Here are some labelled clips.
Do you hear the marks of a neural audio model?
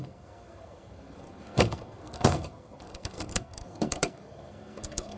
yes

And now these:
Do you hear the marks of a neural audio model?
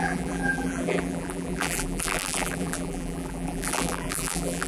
yes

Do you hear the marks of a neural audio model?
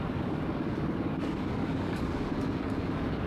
yes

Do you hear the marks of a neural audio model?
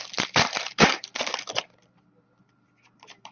no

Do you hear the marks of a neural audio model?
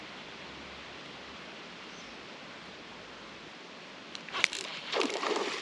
yes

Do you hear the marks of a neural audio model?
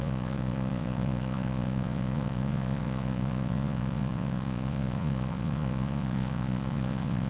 yes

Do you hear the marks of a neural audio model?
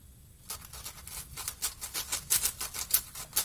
no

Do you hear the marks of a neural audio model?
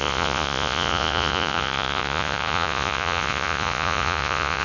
yes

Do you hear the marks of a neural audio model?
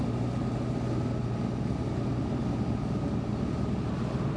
no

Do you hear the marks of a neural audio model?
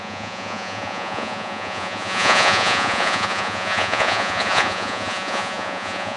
yes